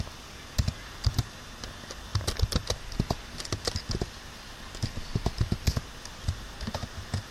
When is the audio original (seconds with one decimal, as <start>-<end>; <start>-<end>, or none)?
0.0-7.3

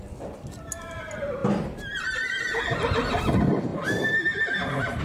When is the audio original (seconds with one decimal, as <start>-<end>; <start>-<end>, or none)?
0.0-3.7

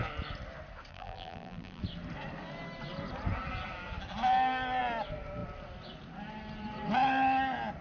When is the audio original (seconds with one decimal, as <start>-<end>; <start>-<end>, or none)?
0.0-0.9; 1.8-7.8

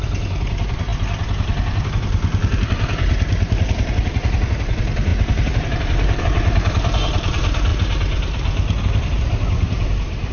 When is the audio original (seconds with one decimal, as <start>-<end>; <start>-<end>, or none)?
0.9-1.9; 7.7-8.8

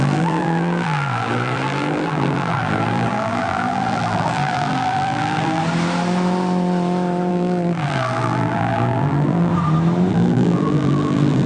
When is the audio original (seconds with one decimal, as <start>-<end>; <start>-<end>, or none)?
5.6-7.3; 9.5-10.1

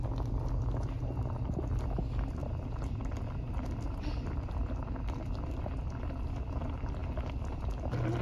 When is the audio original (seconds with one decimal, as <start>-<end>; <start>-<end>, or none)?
0.0-2.4; 4.4-7.0; 7.6-8.2

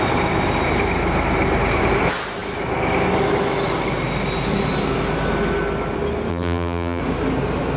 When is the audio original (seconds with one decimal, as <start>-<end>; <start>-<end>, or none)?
0.0-6.3; 7.0-7.8